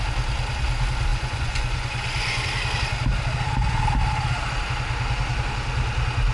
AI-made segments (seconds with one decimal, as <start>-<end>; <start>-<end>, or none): 1.1-2.4